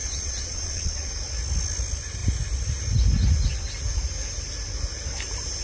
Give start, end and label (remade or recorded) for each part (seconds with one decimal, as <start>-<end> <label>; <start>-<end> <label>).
0.0-1.1 remade; 1.1-5.6 recorded